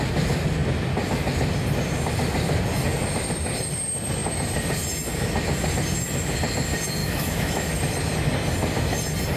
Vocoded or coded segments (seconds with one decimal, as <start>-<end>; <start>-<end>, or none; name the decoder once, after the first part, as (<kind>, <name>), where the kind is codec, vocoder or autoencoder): 7.0-7.7 (autoencoder, DAC-VAE)